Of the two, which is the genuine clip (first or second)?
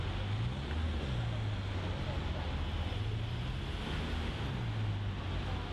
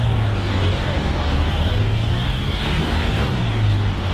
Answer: first